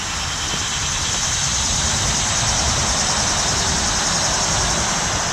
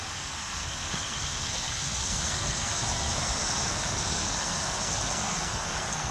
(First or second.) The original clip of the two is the first